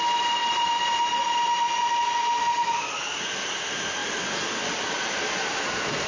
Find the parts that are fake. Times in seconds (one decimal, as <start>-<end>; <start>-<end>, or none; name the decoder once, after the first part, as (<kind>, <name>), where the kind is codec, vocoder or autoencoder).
none